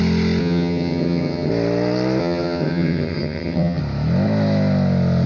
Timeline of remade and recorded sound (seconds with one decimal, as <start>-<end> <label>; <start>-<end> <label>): 0.0-0.4 recorded; 0.4-1.5 remade; 1.5-2.2 recorded; 2.2-3.8 remade; 3.8-5.3 recorded